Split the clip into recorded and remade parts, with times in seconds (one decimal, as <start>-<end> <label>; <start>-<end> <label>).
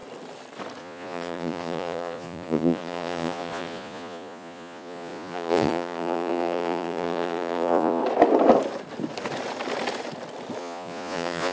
0.0-0.8 recorded; 0.8-8.0 remade; 8.0-10.6 recorded; 10.6-11.5 remade